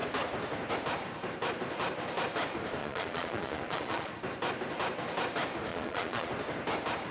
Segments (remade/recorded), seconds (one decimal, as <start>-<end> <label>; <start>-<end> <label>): 0.0-2.8 recorded; 2.8-4.1 remade; 4.1-5.7 recorded; 5.7-6.3 remade; 6.3-7.1 recorded